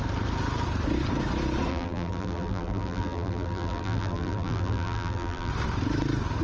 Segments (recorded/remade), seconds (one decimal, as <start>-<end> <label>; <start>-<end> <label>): 0.0-1.7 recorded; 1.7-5.5 remade; 5.5-6.4 recorded